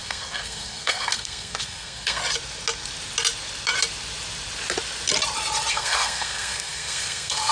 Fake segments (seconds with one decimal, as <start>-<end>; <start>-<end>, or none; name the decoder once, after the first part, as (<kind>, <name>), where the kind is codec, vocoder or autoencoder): 0.0-2.2 (codec, SNAC); 5.7-7.5